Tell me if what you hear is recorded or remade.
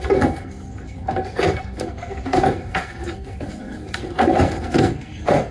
remade